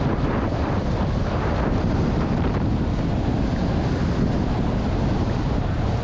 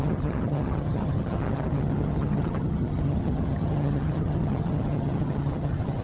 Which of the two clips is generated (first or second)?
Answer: second